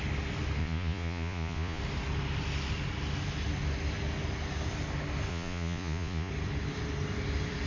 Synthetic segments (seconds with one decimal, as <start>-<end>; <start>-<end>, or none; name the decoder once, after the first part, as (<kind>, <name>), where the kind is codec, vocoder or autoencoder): 0.6-1.8 (vocoder, Vocos); 5.3-6.3